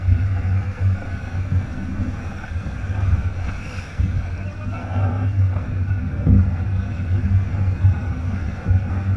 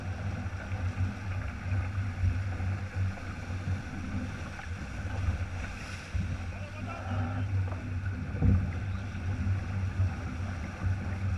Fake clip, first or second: first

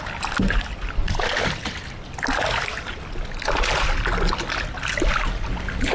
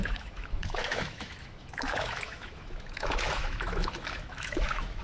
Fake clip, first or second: second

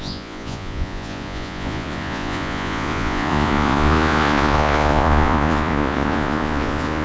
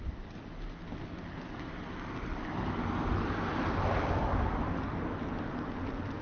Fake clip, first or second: first